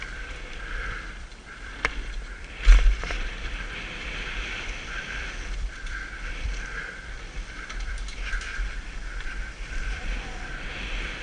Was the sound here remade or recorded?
remade